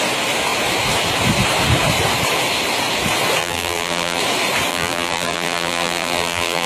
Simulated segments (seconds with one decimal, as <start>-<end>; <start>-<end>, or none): 3.4-4.2; 4.7-6.7